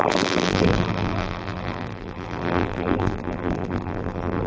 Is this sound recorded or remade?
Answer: remade